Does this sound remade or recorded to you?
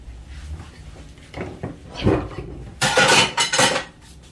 remade